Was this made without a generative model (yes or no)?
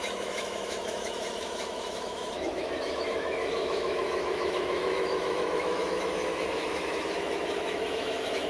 no